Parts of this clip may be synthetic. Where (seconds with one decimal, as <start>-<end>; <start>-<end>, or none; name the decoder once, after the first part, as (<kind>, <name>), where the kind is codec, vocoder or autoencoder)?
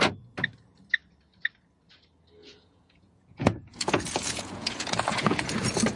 2.4-5.4 (vocoder, Vocos)